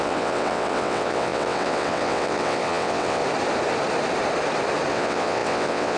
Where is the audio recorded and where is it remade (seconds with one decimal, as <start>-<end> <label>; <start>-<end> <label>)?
0.0-3.2 remade; 3.2-4.9 recorded; 4.9-6.0 remade